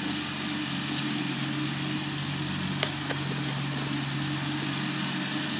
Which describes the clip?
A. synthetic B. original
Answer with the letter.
B